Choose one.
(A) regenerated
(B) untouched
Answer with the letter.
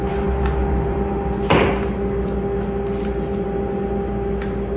B